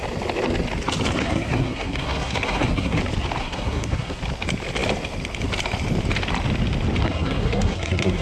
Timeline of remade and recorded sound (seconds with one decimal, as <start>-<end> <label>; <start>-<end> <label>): 0.0-1.2 recorded; 1.2-3.0 remade; 3.0-3.4 recorded; 3.4-4.2 remade; 4.2-7.0 recorded; 7.0-8.2 remade